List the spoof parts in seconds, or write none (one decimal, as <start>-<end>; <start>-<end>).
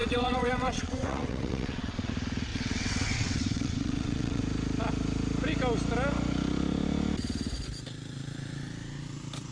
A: 0.0-2.1; 2.5-4.4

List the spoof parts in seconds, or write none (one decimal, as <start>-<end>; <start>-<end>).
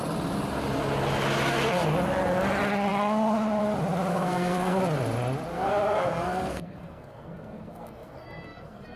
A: 4.1-4.8; 5.5-9.0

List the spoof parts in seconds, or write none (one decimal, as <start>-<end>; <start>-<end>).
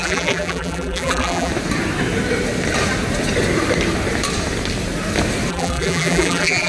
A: 0.0-1.5; 5.5-6.7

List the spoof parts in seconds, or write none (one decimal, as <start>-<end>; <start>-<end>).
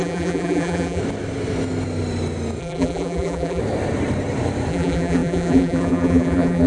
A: 0.0-1.0; 2.6-3.6; 4.7-6.7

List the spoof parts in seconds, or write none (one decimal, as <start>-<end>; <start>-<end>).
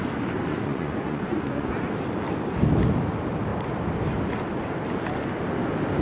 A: 0.5-1.7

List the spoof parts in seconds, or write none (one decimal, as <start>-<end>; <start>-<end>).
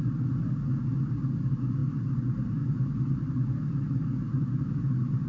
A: none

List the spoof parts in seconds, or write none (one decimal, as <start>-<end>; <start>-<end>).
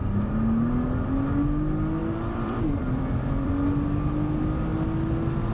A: 2.0-3.5